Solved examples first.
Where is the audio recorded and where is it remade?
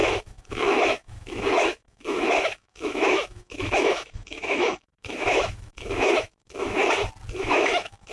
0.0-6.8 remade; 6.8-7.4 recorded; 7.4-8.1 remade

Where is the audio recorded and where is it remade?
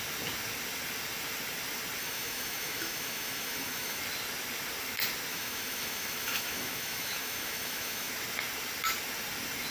0.0-2.0 recorded; 2.0-4.0 remade; 4.0-5.3 recorded; 5.3-8.1 remade; 8.1-9.7 recorded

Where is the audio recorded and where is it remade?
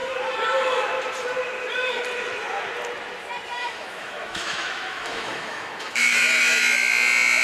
0.0-3.6 recorded; 3.6-6.9 remade; 6.9-7.4 recorded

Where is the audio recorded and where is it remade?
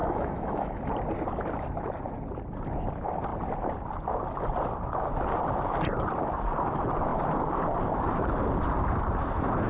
0.0-0.8 remade; 0.8-9.7 recorded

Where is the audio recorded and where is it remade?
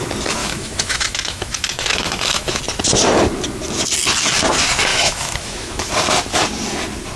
0.0-0.4 recorded; 0.4-2.6 remade; 2.6-4.9 recorded; 4.9-5.9 remade; 5.9-7.2 recorded